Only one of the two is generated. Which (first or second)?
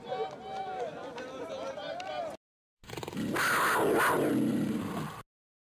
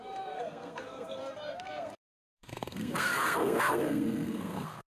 second